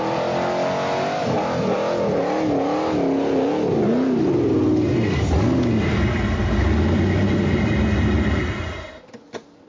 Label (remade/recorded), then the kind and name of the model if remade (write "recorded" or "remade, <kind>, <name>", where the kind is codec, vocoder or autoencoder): recorded